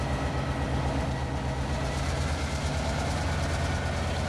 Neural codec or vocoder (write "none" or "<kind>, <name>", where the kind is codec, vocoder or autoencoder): none